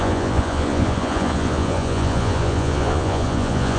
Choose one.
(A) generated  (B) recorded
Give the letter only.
A